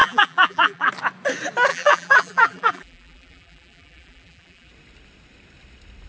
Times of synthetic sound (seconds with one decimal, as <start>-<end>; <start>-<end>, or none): 0.0-0.9; 1.7-4.7